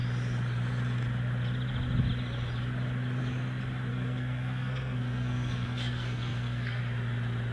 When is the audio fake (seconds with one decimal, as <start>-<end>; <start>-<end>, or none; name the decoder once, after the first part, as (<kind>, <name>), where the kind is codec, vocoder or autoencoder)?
3.9-6.8 (codec, SNAC)